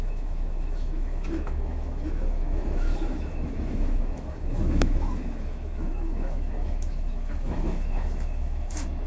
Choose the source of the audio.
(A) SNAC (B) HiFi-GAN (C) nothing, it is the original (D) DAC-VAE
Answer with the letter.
D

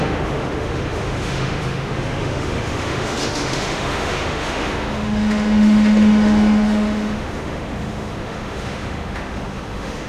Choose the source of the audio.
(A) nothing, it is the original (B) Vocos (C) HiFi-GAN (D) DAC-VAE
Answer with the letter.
D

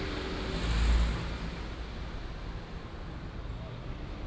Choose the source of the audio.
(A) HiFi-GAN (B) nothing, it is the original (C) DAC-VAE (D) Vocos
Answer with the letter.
B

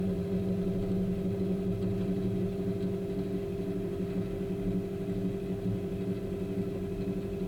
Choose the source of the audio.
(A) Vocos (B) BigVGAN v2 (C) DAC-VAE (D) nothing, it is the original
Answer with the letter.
D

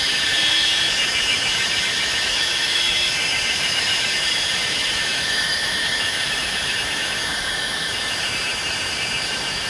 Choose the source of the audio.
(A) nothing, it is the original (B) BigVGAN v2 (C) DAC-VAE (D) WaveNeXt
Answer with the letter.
C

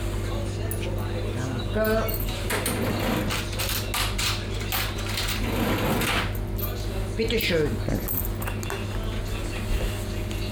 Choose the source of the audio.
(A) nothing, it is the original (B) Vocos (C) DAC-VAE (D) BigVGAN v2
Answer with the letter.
A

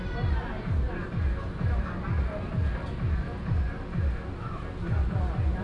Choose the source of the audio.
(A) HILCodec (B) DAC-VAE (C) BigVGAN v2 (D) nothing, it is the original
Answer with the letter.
D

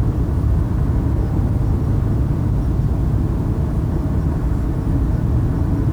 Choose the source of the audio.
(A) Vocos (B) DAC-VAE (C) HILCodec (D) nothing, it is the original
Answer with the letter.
D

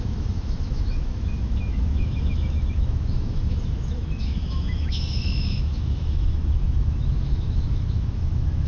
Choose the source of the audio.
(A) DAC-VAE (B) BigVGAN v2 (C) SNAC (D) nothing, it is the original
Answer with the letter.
A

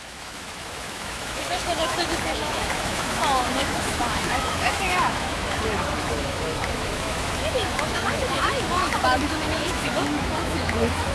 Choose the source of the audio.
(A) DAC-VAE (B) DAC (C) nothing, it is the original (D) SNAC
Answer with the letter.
A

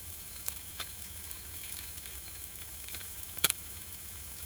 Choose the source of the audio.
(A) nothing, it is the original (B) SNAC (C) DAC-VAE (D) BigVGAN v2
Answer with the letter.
C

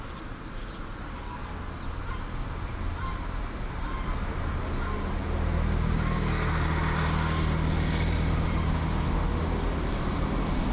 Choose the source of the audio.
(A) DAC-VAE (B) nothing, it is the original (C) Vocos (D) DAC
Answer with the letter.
B